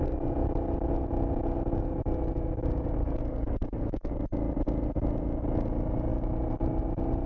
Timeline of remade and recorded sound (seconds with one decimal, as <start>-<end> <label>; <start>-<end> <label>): 0.0-3.0 recorded; 3.0-4.1 remade; 4.1-7.3 recorded